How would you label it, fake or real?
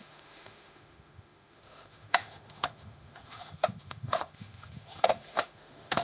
fake